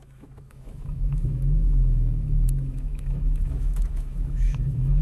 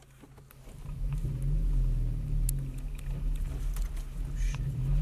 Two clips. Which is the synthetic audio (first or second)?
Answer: first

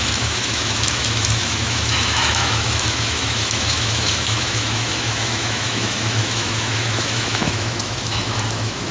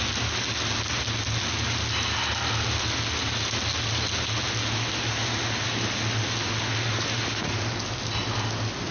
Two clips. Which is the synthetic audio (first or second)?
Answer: first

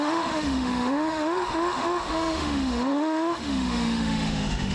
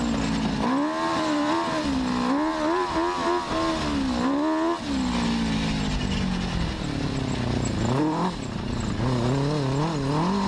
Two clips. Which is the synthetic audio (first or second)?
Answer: first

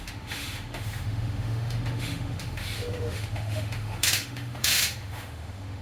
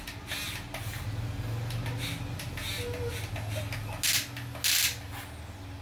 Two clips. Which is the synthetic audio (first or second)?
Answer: first